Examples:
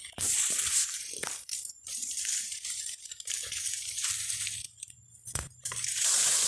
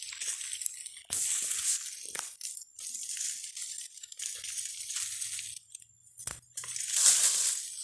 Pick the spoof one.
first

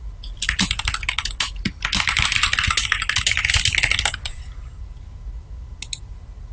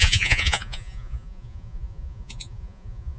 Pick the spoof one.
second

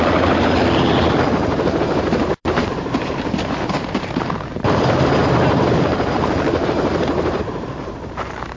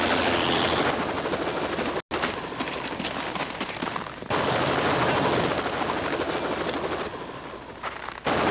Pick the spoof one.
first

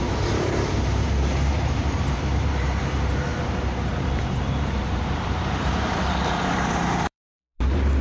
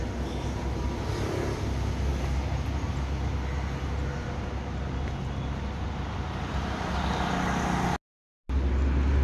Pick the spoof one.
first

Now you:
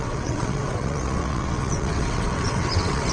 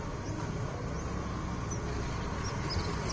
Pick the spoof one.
first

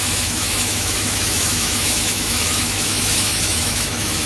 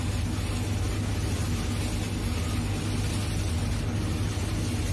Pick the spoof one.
first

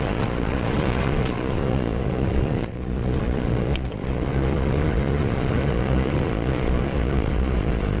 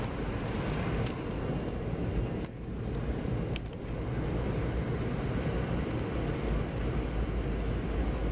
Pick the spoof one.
first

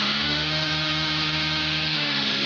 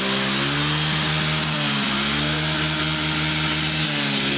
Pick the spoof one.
first